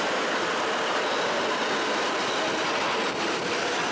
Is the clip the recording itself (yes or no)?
yes